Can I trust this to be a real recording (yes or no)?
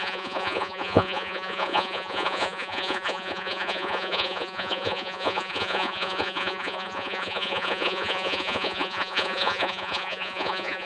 no